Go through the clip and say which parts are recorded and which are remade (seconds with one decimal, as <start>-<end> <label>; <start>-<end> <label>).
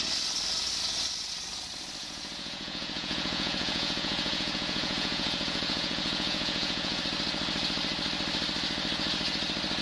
0.0-2.0 recorded; 2.0-7.0 remade; 7.0-9.8 recorded